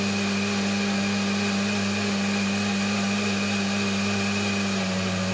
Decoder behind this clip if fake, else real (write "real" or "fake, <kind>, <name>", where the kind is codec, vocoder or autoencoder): real